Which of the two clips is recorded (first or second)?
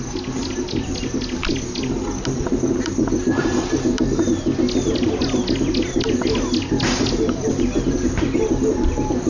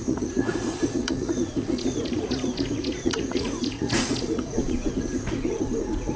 first